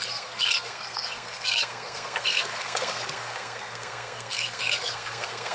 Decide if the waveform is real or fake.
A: fake